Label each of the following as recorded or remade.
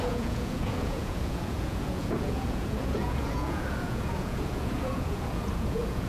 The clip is remade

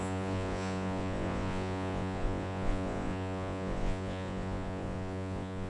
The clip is remade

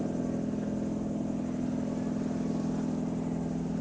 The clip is recorded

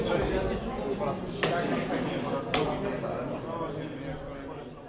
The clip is recorded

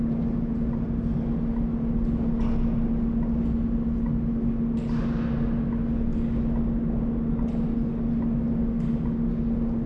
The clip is recorded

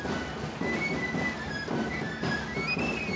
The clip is recorded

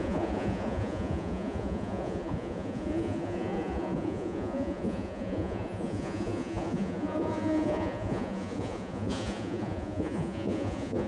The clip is remade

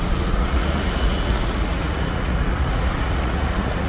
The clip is remade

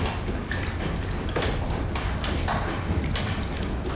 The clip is recorded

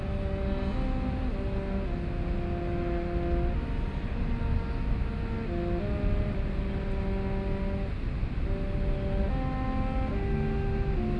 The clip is recorded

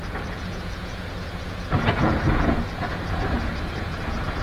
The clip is remade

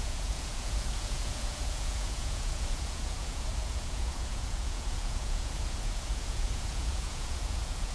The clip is remade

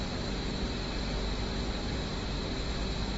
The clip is recorded